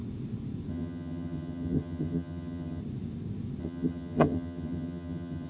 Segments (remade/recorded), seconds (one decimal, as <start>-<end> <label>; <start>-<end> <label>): 0.0-0.7 recorded; 0.7-2.8 remade; 2.8-3.6 recorded; 3.6-5.5 remade

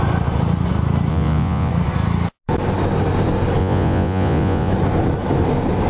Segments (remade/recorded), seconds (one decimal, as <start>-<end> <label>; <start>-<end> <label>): 0.0-1.1 recorded; 1.1-1.7 remade; 1.7-3.6 recorded; 3.6-4.7 remade; 4.7-5.9 recorded

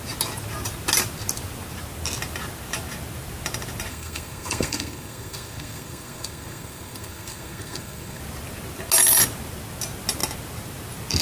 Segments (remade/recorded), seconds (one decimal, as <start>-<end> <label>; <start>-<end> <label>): 0.0-3.9 recorded; 3.9-8.2 remade; 8.2-11.2 recorded

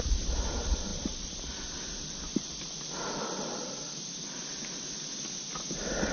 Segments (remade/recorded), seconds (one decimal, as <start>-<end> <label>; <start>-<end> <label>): 0.0-6.1 recorded

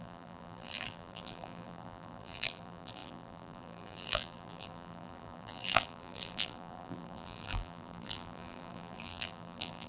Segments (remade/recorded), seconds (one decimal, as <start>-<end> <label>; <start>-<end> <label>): 0.0-9.9 remade

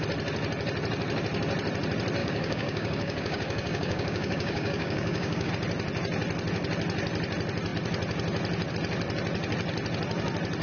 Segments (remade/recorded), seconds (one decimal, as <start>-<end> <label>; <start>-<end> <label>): 0.0-2.2 recorded; 2.2-5.5 remade; 5.5-10.6 recorded

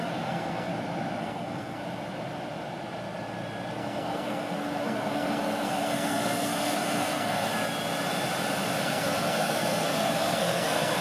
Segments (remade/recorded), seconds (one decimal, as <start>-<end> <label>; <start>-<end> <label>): 0.0-0.7 remade; 0.7-1.2 recorded; 1.2-1.8 remade; 1.8-3.8 recorded; 3.8-7.5 remade; 7.5-8.8 recorded; 8.8-11.0 remade